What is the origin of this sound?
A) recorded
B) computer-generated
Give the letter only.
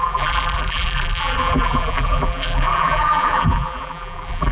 B